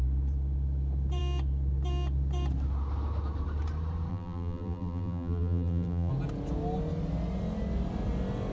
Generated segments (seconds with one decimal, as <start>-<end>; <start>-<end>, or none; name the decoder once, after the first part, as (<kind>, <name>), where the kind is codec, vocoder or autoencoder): 4.1-6.1 (vocoder, BigVGAN v2)